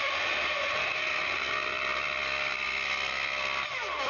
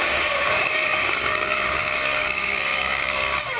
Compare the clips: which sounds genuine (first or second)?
first